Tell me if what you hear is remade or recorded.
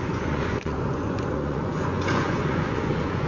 remade